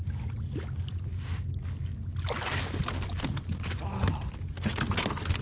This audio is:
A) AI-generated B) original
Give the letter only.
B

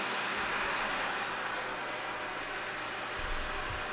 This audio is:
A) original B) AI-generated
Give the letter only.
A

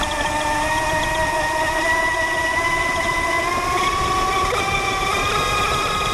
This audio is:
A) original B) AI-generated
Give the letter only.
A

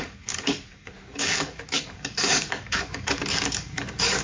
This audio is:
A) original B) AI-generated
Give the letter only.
B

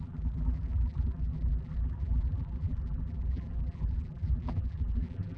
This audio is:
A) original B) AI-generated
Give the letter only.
B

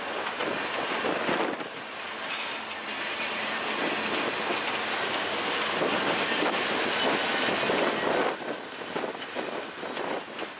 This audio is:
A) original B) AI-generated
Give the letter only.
A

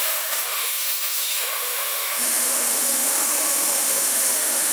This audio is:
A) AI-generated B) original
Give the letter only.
A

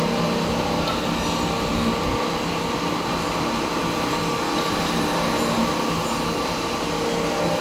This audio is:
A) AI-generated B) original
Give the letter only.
B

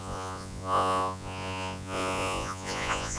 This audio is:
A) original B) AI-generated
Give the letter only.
B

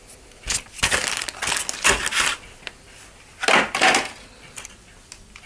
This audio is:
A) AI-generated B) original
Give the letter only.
B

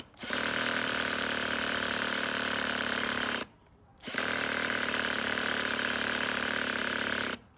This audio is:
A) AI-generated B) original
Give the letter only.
A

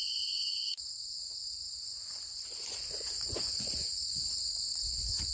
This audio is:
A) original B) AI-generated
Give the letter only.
B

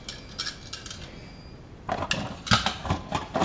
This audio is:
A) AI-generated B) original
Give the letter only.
B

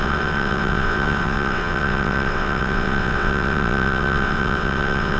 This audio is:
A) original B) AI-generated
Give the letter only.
B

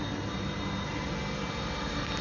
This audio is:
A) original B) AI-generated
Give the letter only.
A